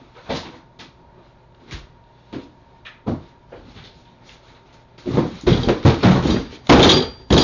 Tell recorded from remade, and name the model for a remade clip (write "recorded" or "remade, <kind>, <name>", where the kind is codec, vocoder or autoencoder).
recorded